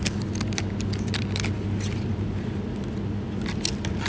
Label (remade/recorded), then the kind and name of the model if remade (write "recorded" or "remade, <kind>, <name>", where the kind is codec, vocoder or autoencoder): recorded